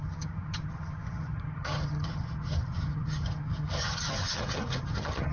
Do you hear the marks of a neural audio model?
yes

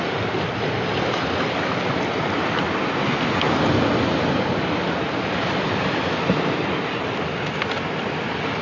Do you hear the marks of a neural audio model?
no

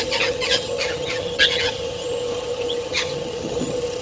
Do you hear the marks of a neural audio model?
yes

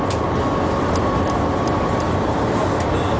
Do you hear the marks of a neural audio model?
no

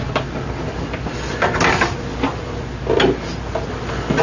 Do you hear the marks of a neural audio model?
no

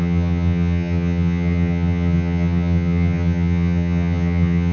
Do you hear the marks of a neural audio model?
yes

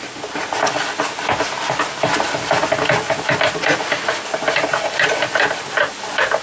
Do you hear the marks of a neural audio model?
no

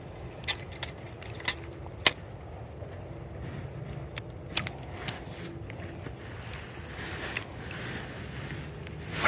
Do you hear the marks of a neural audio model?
no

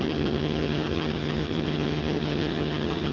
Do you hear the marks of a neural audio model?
yes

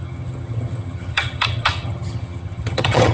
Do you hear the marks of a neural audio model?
yes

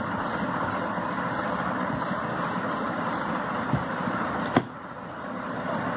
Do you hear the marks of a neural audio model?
no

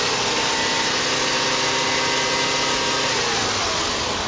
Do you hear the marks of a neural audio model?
no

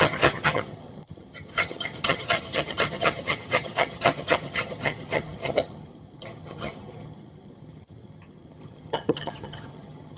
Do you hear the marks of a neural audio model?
yes